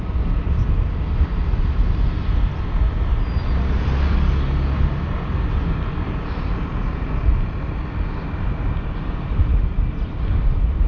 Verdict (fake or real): real